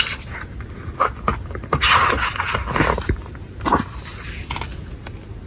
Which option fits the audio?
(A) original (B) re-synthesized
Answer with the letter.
A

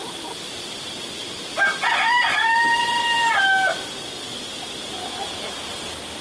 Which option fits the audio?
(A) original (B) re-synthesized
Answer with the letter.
A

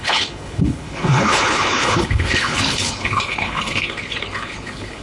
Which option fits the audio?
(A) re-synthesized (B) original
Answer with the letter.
A